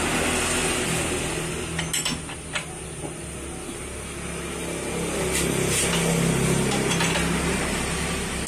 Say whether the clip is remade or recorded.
recorded